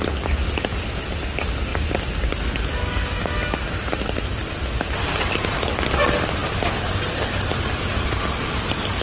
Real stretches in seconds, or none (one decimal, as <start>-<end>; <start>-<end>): 0.0-2.8; 3.3-9.0